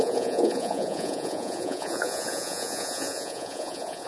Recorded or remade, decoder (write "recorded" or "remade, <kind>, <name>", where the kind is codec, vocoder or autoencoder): remade, vocoder, Vocos